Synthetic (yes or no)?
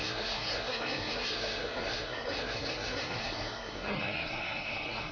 yes